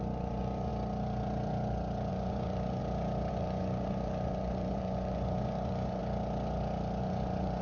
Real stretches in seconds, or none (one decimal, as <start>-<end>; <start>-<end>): 0.7-2.1; 2.8-3.3; 6.0-7.0